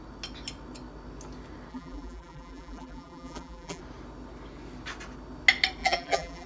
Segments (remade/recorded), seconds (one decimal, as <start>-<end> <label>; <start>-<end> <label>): 0.0-1.7 recorded; 1.7-3.8 remade; 3.8-5.8 recorded; 5.8-6.5 remade